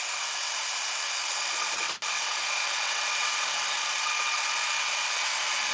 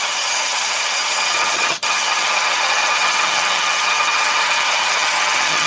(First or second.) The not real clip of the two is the second